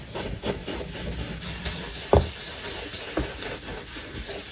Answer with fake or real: real